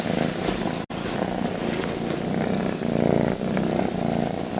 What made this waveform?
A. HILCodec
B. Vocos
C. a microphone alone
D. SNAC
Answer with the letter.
C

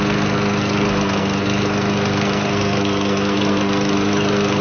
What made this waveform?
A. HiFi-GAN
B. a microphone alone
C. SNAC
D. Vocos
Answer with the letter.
C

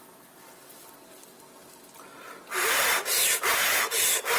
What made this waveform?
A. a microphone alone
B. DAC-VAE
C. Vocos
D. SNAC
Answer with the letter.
A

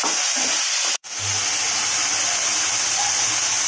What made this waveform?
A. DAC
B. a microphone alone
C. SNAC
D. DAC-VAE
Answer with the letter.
B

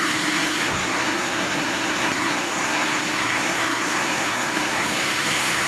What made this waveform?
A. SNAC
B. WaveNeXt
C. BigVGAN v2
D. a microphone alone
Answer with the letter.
A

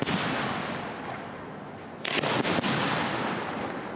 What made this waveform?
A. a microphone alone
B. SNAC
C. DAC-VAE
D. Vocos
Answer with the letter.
A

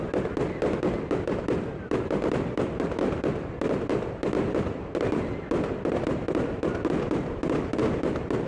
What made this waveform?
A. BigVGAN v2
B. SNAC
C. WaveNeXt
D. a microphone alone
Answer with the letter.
D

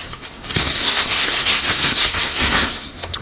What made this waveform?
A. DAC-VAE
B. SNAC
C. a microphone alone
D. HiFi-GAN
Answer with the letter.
B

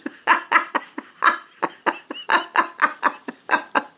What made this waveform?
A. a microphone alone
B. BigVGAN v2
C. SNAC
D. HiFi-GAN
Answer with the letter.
A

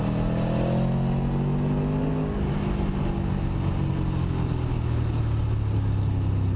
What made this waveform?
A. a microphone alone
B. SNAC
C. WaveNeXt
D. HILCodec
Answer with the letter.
A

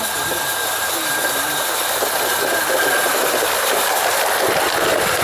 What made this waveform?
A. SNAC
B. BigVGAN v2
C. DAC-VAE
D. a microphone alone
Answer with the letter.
D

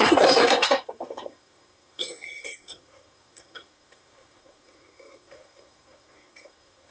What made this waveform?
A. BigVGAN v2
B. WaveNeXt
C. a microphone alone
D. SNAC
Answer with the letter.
D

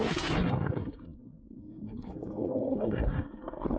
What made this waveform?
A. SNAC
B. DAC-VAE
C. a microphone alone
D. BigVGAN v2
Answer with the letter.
A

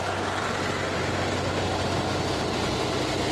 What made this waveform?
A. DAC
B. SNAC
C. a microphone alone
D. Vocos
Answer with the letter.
C